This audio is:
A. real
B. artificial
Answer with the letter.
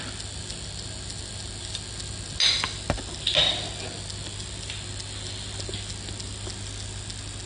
A